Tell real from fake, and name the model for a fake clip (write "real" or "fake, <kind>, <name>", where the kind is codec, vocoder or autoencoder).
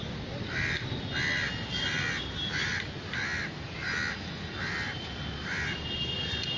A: real